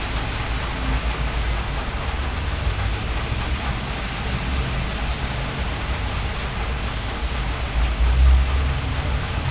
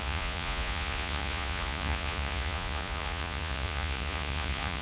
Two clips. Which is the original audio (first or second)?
first